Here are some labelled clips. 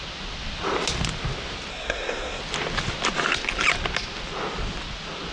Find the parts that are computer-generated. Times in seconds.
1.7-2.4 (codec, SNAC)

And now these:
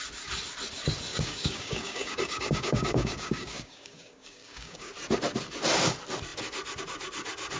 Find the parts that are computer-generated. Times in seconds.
1.1-4.9 (codec, DAC)

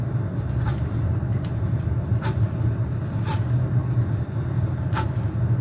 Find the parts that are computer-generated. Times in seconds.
0.0-5.6 (vocoder, BigVGAN v2)

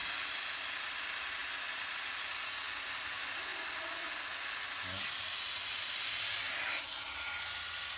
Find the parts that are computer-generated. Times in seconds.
3.5-4.1 (vocoder, BigVGAN v2)